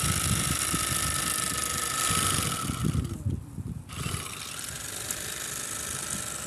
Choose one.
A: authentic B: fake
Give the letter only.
A